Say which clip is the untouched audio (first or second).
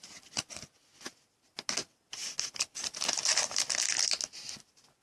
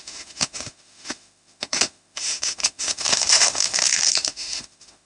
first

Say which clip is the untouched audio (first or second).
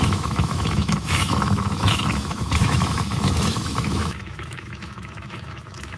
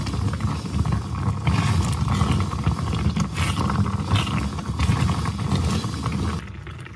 second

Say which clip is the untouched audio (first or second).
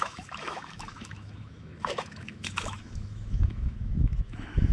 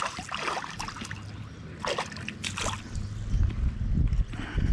second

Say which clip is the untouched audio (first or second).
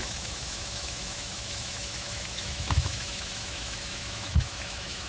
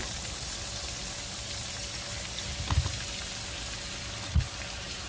second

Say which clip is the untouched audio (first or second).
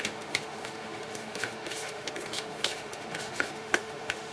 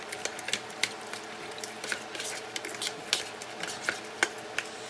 second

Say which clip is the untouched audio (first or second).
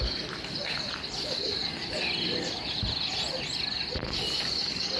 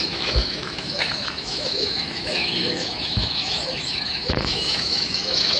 first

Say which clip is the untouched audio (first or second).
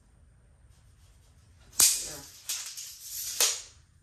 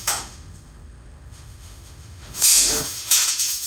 first